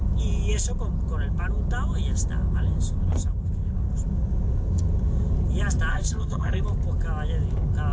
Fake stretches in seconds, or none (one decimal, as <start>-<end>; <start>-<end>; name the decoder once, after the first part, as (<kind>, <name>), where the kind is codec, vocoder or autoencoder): 5.9-6.6 (codec, SNAC)

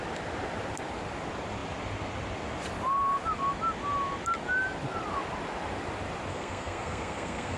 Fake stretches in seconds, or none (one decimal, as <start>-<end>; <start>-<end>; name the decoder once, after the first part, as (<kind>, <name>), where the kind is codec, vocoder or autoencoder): 6.3-7.6 (codec, SNAC)

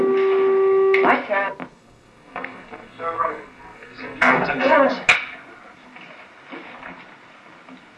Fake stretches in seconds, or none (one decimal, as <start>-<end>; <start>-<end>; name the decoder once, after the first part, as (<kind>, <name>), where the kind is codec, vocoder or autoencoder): 1.7-4.9 (codec, SNAC)

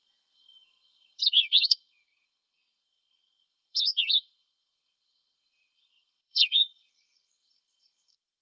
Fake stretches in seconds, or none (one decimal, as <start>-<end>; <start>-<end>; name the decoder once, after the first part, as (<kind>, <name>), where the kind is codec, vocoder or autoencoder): 0.0-8.4 (codec, SNAC)

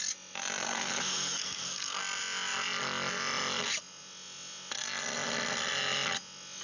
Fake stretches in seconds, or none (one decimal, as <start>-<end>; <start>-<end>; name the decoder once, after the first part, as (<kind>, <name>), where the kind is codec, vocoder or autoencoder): 0.6-2.0 (codec, SNAC)

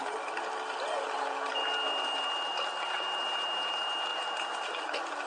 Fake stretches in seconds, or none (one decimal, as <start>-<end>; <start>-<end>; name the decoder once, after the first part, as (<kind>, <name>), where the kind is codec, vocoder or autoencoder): none

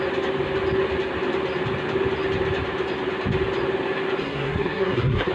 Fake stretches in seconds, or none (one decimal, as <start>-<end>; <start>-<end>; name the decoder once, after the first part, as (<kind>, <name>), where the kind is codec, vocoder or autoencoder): 4.2-5.3 (codec, SNAC)

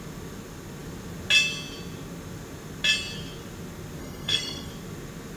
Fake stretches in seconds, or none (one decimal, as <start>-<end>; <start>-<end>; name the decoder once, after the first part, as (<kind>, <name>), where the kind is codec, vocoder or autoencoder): 4.0-4.7 (codec, SNAC)